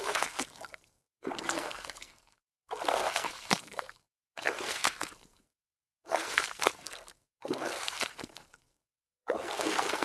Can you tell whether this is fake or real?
fake